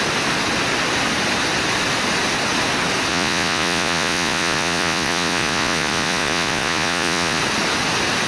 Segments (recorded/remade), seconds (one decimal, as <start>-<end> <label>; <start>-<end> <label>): 0.0-3.1 recorded; 3.1-7.4 remade; 7.4-8.3 recorded